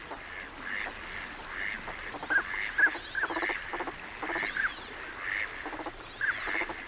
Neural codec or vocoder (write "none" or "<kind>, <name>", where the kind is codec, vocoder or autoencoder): none